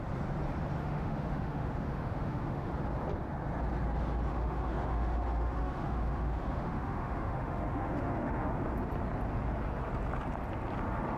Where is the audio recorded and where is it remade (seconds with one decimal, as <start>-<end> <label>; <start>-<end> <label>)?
0.0-0.8 recorded; 0.8-2.7 remade; 2.7-4.3 recorded; 4.3-8.5 remade; 8.5-11.2 recorded